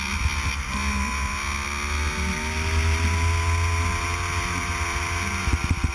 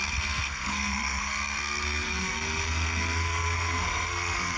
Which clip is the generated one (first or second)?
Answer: second